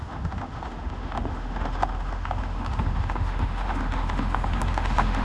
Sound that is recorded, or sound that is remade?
remade